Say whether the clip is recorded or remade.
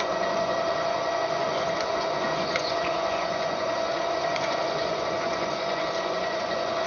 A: remade